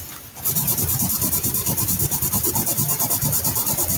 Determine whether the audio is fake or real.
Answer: real